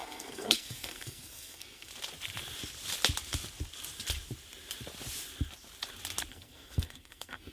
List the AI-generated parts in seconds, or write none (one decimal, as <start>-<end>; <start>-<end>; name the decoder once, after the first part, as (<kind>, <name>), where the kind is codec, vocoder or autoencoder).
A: 0.0-1.9 (codec, SNAC); 6.3-7.5